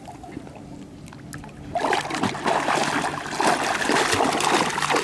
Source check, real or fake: real